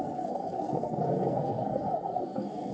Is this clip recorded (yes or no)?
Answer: no